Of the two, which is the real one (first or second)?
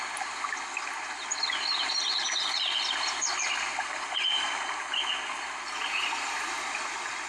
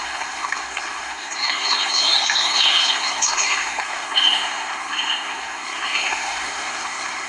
first